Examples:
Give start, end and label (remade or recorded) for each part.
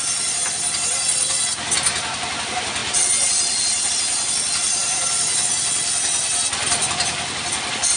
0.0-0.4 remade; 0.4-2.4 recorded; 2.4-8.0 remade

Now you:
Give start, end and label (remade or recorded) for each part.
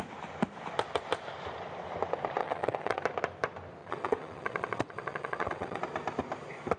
0.0-2.4 recorded; 2.4-3.0 remade; 3.0-3.8 recorded; 3.8-5.8 remade; 5.8-6.8 recorded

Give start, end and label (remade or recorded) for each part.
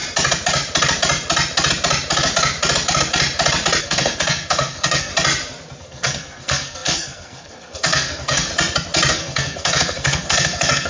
0.0-3.8 recorded; 3.8-5.1 remade; 5.1-5.8 recorded; 5.8-8.5 remade; 8.5-9.1 recorded; 9.1-10.9 remade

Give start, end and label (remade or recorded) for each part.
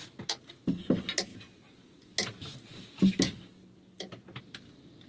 0.0-5.1 recorded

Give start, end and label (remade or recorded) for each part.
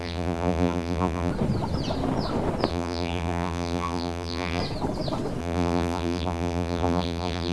0.0-1.3 remade; 1.3-2.7 recorded; 2.7-4.6 remade; 4.6-5.4 recorded; 5.4-7.5 remade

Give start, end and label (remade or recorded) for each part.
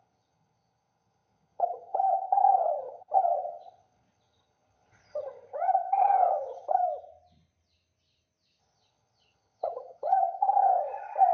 0.0-6.8 remade; 6.8-8.6 recorded; 8.6-11.3 remade